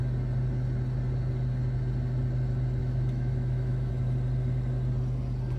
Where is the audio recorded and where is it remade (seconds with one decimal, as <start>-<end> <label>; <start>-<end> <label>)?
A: 0.0-2.8 recorded; 2.8-3.9 remade; 3.9-5.6 recorded